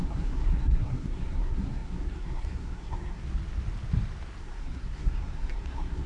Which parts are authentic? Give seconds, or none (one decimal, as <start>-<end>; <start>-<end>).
3.2-4.4